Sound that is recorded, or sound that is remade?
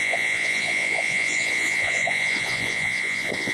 remade